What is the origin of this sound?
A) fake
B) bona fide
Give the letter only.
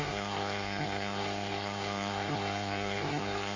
A